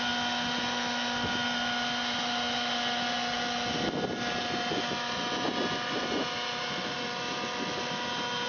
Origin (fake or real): real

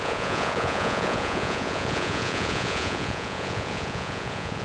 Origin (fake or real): fake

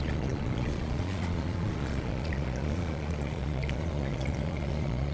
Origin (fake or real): fake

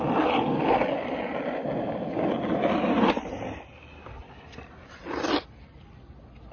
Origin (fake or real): real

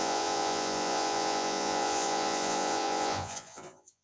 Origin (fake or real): fake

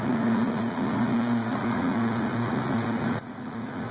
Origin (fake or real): fake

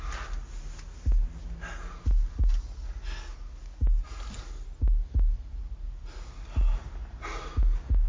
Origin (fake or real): real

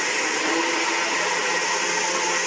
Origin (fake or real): real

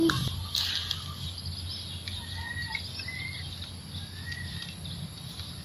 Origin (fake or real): real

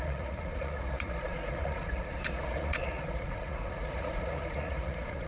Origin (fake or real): fake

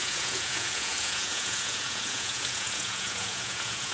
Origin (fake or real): fake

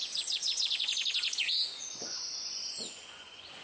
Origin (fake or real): fake